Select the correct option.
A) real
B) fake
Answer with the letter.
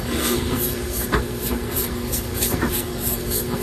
B